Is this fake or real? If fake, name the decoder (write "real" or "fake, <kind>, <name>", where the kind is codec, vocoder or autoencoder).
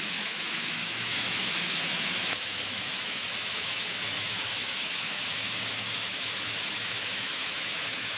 fake, autoencoder, DAC-VAE